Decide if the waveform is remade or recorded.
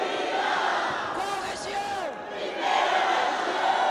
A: recorded